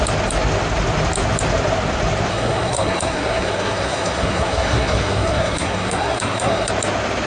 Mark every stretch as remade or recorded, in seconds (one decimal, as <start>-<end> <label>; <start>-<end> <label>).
0.0-2.3 recorded; 2.3-6.7 remade; 6.7-7.3 recorded